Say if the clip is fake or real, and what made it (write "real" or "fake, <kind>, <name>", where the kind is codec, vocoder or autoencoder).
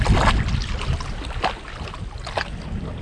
real